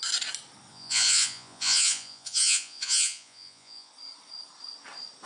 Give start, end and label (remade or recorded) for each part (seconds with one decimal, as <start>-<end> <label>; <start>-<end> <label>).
0.0-0.7 recorded; 0.7-3.9 remade; 3.9-5.3 recorded